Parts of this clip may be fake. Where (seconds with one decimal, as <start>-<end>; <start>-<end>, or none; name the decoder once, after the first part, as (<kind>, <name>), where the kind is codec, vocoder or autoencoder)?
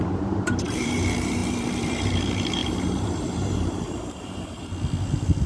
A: 0.0-4.7 (vocoder, BigVGAN v2)